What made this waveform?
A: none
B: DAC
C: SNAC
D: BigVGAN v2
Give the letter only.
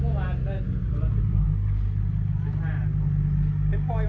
A